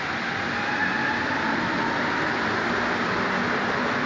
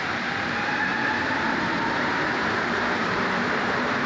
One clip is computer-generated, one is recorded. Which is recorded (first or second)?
first